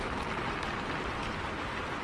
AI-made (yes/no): yes